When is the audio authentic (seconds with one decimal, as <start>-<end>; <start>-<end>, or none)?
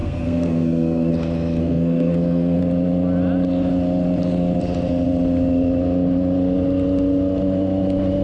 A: 1.1-1.6; 2.6-8.2